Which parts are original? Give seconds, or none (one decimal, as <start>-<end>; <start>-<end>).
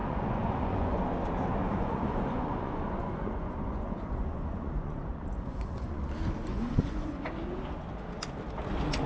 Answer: 1.0-1.6; 6.0-6.4; 7.3-9.1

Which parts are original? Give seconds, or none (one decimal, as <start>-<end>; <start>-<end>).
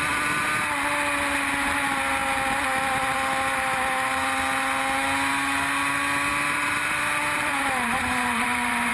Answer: 0.0-6.3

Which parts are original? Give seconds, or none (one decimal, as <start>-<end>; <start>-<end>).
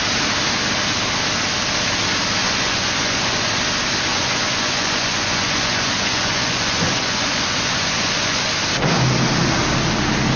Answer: 0.0-2.4; 3.5-4.1; 8.5-10.4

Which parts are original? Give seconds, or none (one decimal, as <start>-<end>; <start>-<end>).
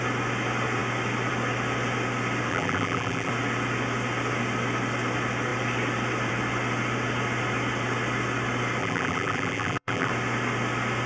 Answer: 0.0-2.5; 3.3-8.8; 10.1-11.1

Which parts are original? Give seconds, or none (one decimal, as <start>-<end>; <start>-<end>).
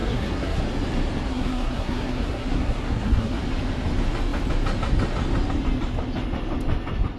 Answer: 0.6-1.3; 3.4-7.2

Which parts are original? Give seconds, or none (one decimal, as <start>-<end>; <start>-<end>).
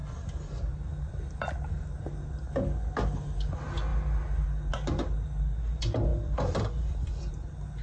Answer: 0.0-6.1; 7.3-7.8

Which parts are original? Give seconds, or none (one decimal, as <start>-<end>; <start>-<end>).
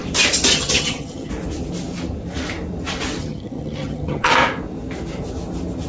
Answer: 0.0-0.5; 1.3-3.2; 4.3-5.9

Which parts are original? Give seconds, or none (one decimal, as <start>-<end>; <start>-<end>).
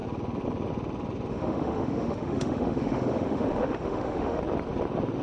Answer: 0.0-1.3; 4.4-5.2